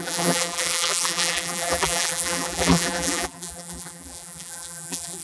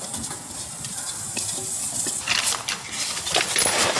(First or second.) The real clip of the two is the second